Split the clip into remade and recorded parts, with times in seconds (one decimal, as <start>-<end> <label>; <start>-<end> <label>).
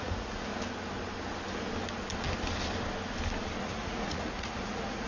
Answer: 0.0-0.5 remade; 0.5-3.6 recorded; 3.6-5.1 remade